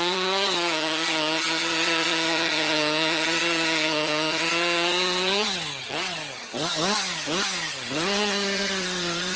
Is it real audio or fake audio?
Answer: fake